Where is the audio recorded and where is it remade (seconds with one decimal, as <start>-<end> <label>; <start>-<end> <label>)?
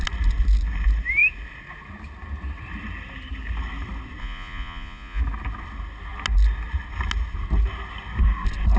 0.0-4.2 recorded; 4.2-5.2 remade; 5.2-8.8 recorded